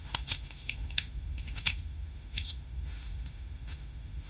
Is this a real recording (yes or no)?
no